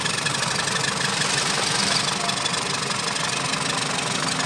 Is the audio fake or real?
real